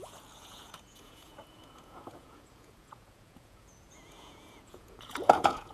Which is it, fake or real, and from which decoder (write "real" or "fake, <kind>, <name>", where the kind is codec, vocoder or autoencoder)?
fake, vocoder, Vocos